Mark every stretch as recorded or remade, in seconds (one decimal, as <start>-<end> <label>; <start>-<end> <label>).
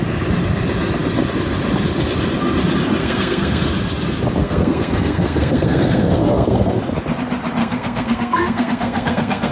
0.0-3.0 recorded; 3.0-3.6 remade; 3.6-4.4 recorded; 4.4-6.8 remade; 6.8-7.6 recorded; 7.6-9.5 remade